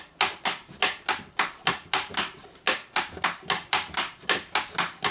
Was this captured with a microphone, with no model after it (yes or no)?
yes